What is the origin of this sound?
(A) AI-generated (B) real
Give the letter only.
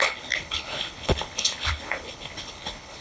A